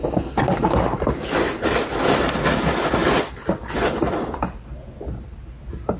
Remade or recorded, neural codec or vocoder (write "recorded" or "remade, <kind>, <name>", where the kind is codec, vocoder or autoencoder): recorded